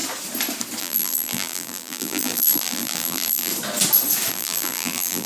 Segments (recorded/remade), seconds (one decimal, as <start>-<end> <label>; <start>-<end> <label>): 0.0-0.8 recorded; 0.8-3.5 remade; 3.5-4.3 recorded; 4.3-5.3 remade